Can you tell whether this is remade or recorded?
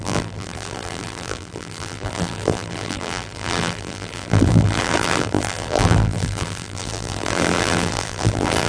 remade